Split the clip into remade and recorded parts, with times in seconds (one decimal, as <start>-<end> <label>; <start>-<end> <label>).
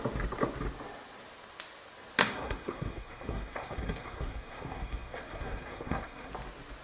0.0-2.2 recorded; 2.2-6.3 remade; 6.3-6.8 recorded